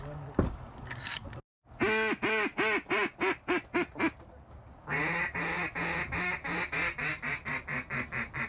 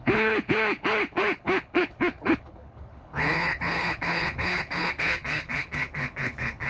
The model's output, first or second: second